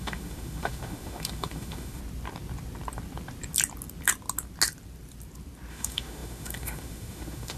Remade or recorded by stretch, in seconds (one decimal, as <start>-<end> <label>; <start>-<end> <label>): 0.0-2.0 remade; 2.0-5.7 recorded; 5.7-7.6 remade